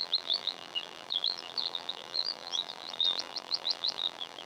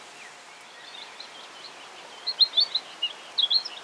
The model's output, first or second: first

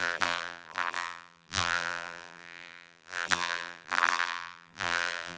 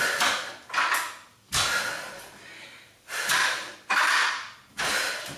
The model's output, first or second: first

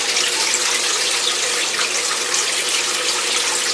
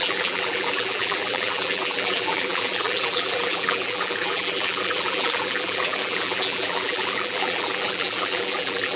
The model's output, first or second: second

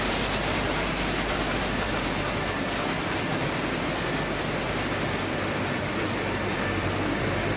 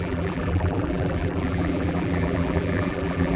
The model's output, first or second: second